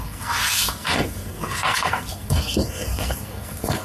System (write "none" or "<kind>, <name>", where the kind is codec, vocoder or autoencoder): codec, SNAC